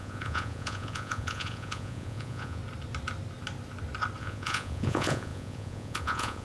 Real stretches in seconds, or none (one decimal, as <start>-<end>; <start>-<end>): 2.6-4.2